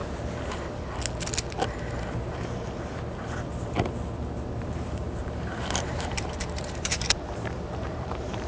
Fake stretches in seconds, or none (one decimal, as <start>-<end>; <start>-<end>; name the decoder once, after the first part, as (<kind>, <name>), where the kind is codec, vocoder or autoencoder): 4.6-8.5 (vocoder, BigVGAN v2)